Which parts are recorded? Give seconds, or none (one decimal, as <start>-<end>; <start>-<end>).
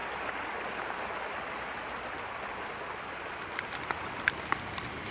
0.0-5.1